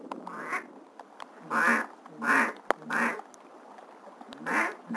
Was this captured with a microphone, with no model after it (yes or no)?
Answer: yes